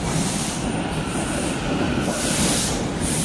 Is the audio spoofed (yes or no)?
yes